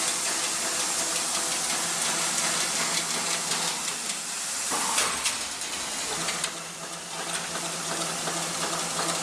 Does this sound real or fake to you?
real